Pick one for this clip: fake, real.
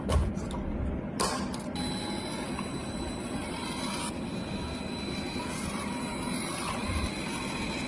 real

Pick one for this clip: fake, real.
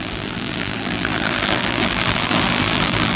fake